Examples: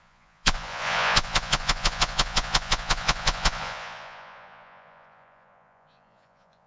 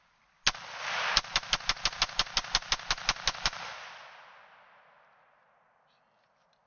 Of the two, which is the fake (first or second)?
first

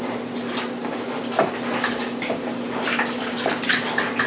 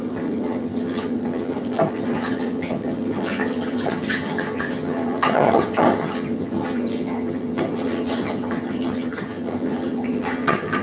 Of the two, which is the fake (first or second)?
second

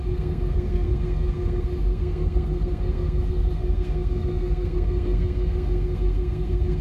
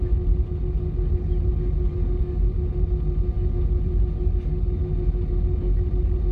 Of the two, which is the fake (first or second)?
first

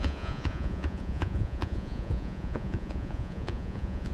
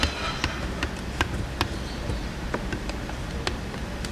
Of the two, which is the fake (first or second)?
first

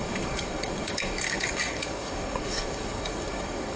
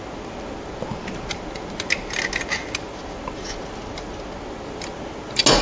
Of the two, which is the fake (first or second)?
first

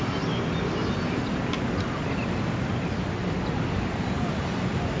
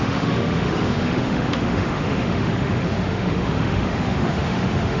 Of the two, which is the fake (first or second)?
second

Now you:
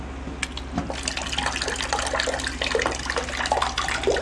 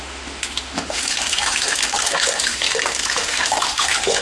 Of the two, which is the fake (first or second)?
second